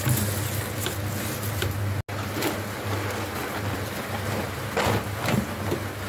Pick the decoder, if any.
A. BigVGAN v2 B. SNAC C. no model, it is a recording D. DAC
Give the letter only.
C